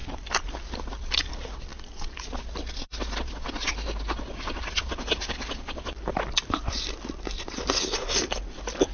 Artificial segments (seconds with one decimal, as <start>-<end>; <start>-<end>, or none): 0.0-1.7; 4.3-8.9